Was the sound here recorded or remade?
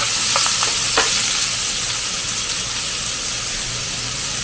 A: recorded